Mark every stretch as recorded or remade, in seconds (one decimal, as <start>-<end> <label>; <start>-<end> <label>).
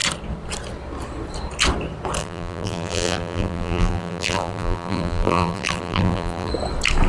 0.0-2.2 recorded; 2.2-6.5 remade; 6.5-7.1 recorded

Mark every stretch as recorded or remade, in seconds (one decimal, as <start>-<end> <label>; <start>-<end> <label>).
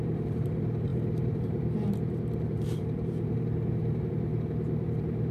0.0-5.3 remade